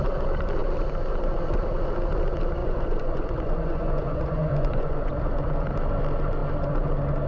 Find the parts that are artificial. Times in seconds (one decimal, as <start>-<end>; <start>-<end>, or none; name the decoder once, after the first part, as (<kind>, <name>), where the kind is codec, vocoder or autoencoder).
2.6-5.1 (vocoder, Vocos)